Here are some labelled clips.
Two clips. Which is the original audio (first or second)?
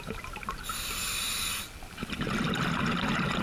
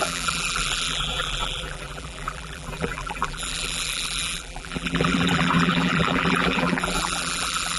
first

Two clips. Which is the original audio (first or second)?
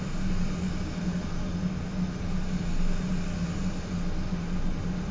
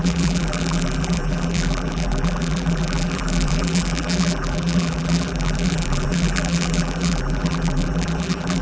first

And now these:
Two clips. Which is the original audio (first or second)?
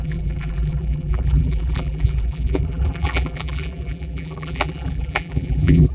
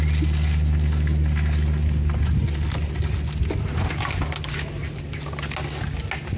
second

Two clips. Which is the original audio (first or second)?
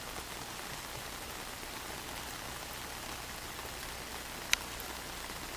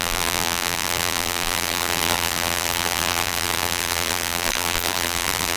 first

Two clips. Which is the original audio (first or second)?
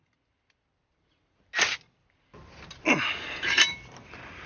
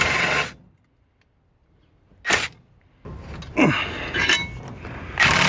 second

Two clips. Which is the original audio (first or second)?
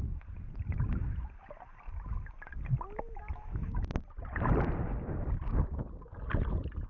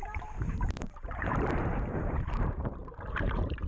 first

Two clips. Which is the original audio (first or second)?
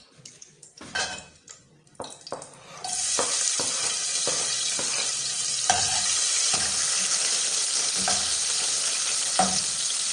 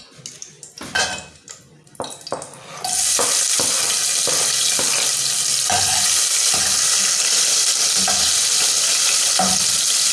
second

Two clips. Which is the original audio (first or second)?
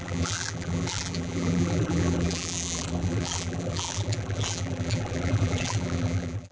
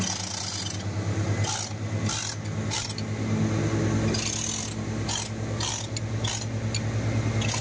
second